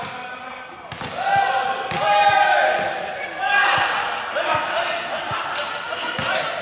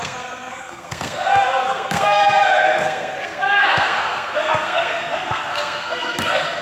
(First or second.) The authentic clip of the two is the first